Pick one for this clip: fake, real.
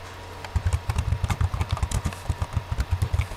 real